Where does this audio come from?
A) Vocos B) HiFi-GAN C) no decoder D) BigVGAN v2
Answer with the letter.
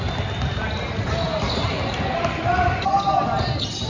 C